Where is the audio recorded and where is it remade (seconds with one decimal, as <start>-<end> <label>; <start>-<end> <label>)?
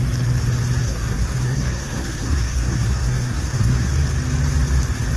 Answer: 0.0-0.8 recorded; 0.8-3.9 remade; 3.9-5.2 recorded